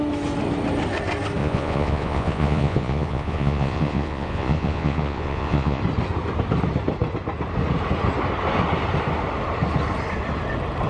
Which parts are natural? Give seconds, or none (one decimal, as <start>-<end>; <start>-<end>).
0.0-1.4; 5.8-10.9